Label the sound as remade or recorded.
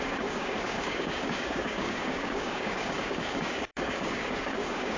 remade